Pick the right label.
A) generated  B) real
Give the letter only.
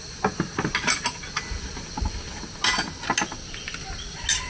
B